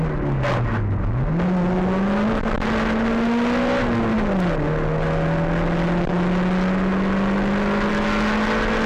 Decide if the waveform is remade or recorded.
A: recorded